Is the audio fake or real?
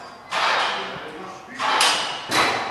real